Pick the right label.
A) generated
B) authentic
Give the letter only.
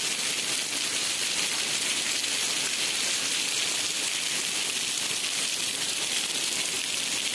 B